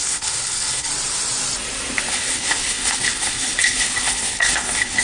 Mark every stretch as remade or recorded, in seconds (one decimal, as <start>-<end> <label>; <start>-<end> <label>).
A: 0.0-0.9 remade; 0.9-2.1 recorded; 2.1-5.0 remade